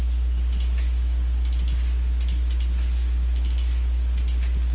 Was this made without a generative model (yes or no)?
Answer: yes